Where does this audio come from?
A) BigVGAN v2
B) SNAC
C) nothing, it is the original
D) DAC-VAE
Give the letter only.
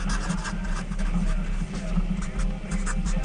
C